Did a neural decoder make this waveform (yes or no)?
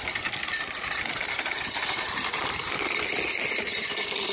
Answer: no